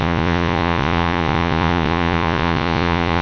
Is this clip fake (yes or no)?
yes